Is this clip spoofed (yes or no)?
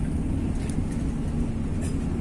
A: no